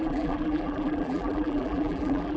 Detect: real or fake fake